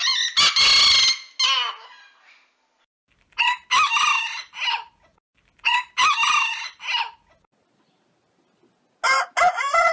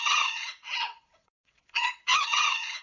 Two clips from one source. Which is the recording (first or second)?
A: first